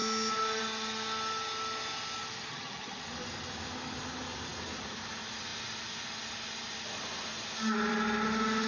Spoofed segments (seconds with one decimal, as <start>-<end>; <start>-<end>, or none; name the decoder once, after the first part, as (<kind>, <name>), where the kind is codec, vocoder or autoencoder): 2.5-3.0 (vocoder, HiFi-GAN)